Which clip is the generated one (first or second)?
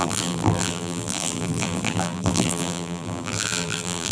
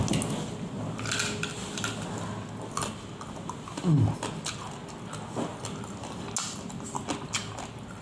first